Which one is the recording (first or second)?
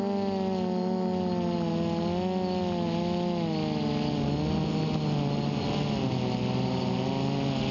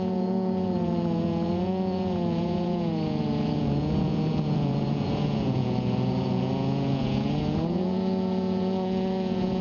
first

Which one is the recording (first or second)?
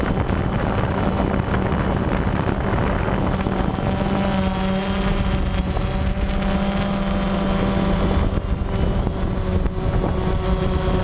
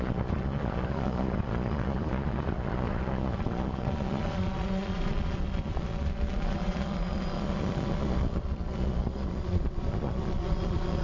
first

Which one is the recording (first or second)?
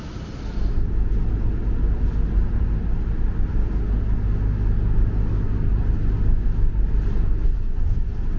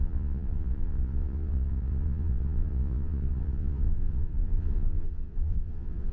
first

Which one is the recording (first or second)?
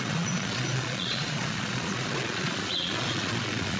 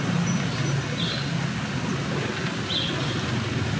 second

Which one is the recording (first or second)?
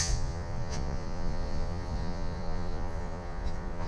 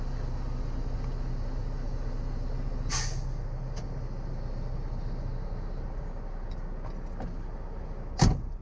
second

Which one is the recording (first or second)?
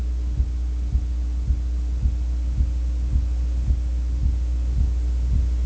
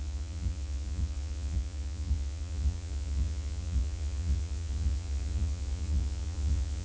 first